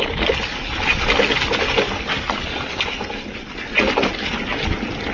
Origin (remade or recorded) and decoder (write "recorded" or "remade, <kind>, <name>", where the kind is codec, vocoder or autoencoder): recorded